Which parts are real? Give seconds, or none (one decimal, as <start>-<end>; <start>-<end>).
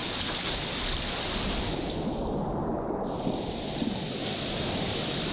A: 0.0-5.3